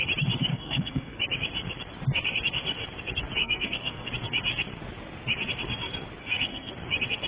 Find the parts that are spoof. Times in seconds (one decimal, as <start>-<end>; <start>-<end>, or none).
0.5-1.2; 3.4-4.1; 6.2-6.7